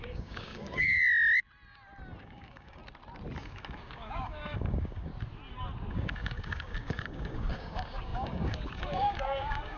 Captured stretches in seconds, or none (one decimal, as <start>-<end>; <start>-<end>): 1.0-2.2; 2.8-3.4; 5.1-5.9